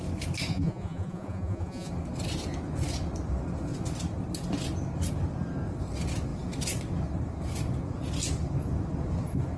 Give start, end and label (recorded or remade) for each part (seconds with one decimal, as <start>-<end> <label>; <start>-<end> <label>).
0.0-0.5 recorded; 0.5-1.9 remade; 1.9-9.6 recorded